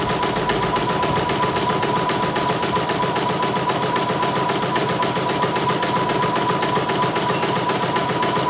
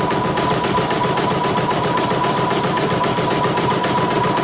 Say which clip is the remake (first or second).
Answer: second